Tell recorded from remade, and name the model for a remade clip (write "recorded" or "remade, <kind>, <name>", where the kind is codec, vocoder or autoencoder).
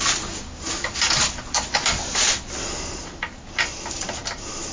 recorded